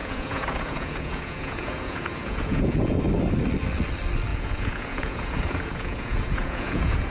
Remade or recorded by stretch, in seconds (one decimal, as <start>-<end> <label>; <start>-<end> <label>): 0.0-3.0 remade; 3.0-4.3 recorded; 4.3-7.1 remade